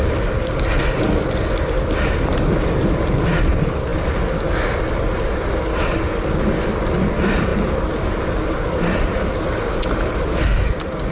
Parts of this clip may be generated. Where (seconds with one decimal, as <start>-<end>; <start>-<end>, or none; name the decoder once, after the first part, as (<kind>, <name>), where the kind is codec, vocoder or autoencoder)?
none